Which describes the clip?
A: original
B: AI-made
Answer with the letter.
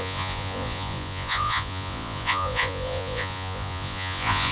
B